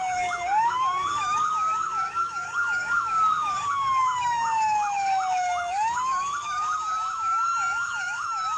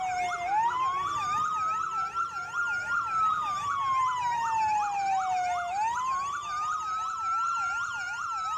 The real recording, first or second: second